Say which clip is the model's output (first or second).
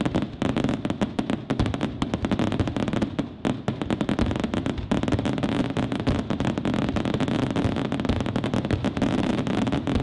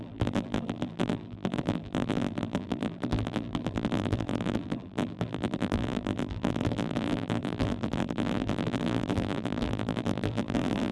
second